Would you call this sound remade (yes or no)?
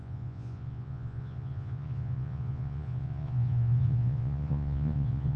yes